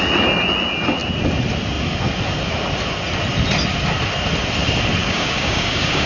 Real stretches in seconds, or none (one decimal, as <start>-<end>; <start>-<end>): 0.0-5.0

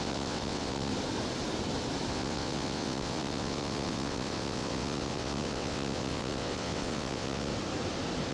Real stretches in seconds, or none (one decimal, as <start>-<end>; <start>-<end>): 0.9-2.1; 7.5-8.3

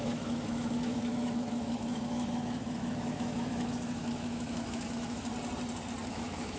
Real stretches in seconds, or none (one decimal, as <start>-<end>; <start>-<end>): 5.3-6.1

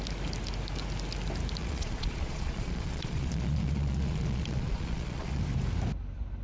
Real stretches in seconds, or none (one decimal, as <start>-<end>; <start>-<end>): 0.0-1.6; 5.4-6.4

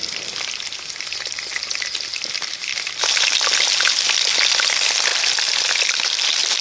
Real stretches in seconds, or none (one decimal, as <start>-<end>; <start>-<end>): 0.8-5.1